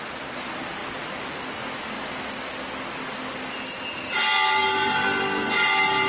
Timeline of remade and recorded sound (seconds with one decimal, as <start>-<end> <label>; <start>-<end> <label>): 0.0-6.1 recorded